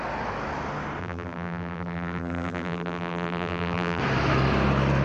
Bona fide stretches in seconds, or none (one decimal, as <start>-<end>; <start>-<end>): 0.0-1.0; 4.0-5.0